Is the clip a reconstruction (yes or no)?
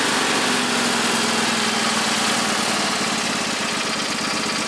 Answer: no